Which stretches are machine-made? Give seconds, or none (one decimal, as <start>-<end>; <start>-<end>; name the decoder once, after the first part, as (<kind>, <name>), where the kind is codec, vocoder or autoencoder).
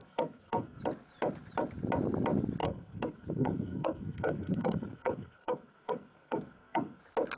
0.0-0.8 (codec, SNAC); 2.6-7.0